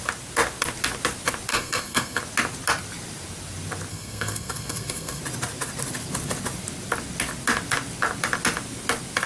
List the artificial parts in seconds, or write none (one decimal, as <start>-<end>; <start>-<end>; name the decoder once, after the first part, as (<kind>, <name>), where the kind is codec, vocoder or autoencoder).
1.5-2.2 (codec, SNAC); 3.9-5.2